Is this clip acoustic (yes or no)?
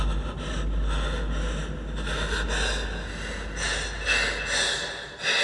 yes